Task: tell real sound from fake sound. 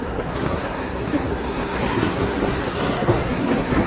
fake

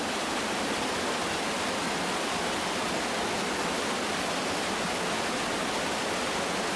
real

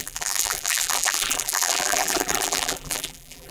fake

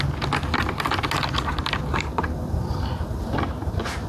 real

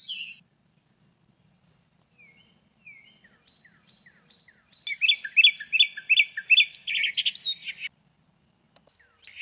real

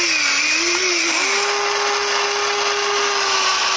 real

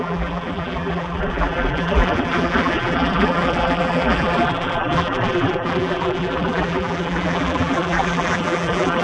fake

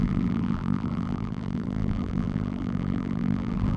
fake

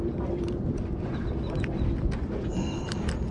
real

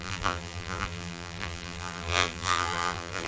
fake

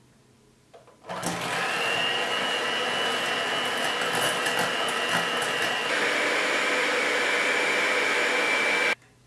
real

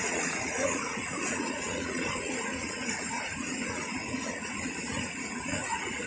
fake